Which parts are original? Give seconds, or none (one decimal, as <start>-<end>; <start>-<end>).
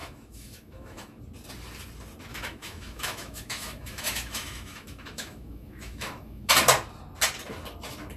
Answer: 1.2-2.3; 6.5-8.2